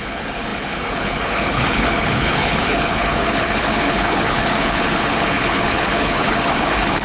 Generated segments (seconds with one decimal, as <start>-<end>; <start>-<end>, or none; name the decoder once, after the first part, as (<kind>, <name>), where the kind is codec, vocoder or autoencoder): 0.0-7.0 (codec, HILCodec)